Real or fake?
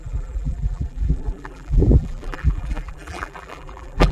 fake